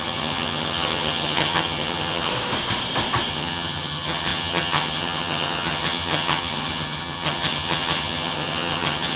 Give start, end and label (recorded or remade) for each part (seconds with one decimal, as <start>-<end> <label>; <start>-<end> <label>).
0.0-2.3 remade; 2.3-3.3 recorded; 3.3-9.2 remade